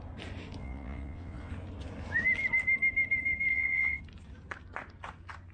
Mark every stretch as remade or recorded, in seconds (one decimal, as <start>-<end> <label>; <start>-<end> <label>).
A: 0.0-0.6 recorded; 0.6-1.5 remade; 1.5-3.5 recorded; 3.5-4.0 remade; 4.0-5.5 recorded